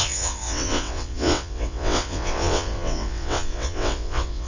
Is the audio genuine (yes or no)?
no